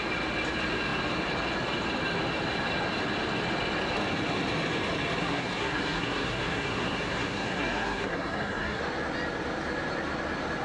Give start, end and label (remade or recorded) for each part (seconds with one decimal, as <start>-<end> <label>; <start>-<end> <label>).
0.0-5.2 recorded; 5.2-8.8 remade; 8.8-10.6 recorded